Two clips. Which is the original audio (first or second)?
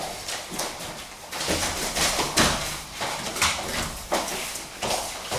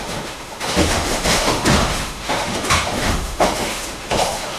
first